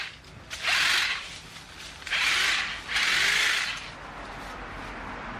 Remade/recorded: recorded